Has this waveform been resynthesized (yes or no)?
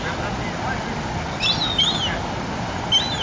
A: no